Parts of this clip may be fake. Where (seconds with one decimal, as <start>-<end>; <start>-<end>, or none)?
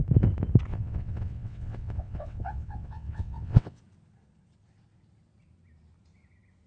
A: 0.7-3.8